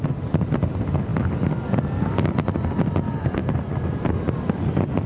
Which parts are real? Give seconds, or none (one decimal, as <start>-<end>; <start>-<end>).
0.0-5.1